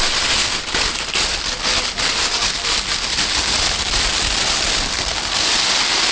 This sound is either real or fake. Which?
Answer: real